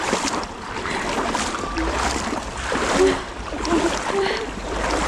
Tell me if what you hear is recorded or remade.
remade